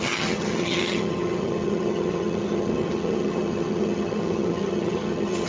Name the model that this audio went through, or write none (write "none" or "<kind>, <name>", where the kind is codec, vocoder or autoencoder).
vocoder, HiFi-GAN